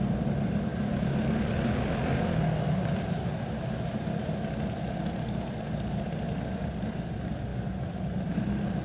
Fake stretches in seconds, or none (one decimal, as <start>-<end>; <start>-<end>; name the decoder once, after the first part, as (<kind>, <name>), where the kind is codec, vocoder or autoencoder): none